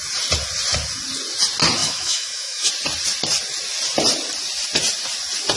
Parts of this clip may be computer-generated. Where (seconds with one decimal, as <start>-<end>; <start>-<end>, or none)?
1.8-2.7